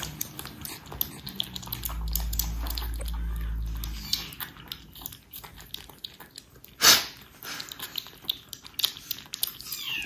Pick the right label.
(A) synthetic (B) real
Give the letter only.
B